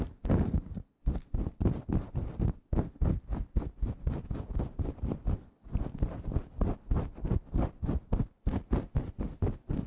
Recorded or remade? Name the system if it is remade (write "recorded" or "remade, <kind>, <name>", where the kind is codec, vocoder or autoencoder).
recorded